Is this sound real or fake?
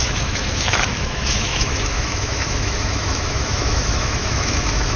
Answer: fake